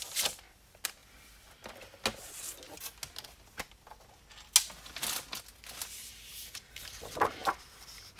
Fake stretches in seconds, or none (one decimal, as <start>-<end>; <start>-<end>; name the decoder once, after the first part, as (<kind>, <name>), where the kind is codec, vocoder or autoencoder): none